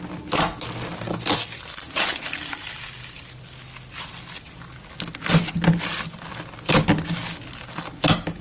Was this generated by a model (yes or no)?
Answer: no